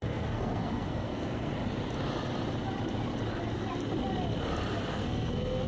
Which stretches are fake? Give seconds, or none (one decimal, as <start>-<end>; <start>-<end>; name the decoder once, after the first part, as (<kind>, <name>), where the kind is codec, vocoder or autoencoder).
0.0-1.5 (codec, SNAC); 4.9-5.7